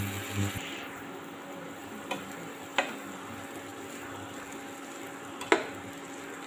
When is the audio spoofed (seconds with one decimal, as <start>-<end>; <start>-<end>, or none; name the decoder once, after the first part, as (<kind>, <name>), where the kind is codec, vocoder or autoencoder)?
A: none

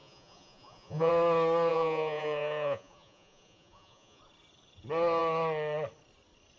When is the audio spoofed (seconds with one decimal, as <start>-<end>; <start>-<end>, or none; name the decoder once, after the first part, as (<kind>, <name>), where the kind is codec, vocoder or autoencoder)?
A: 0.0-1.1 (vocoder, Vocos); 1.7-4.2